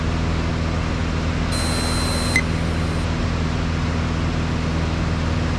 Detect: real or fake real